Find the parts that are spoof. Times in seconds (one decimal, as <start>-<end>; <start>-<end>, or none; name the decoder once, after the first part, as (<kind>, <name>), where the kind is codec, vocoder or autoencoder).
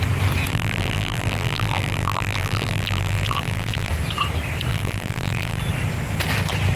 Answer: 0.5-3.9 (vocoder, BigVGAN v2); 4.7-5.6